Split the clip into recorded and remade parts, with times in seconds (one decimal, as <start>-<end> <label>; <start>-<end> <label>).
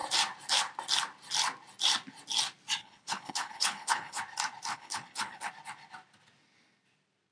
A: 0.0-2.8 recorded; 2.8-4.2 remade; 4.2-4.7 recorded; 4.7-5.5 remade; 5.5-7.3 recorded